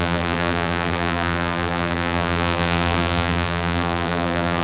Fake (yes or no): yes